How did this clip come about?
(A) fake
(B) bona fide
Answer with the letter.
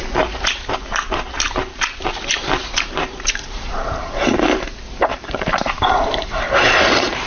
A